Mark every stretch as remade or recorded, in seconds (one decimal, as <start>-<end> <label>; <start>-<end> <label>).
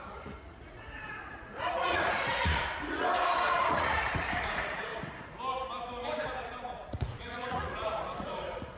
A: 0.0-4.9 remade; 4.9-6.4 recorded; 6.4-8.8 remade